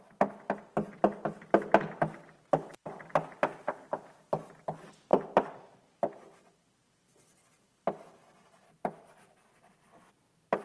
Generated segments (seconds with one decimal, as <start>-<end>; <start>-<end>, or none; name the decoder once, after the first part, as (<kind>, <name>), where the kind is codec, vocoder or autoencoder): none